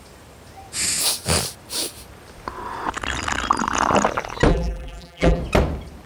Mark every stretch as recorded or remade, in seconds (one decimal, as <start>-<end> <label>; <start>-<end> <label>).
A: 0.0-4.5 recorded; 4.5-5.4 remade; 5.4-6.1 recorded